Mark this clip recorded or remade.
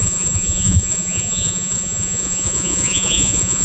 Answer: remade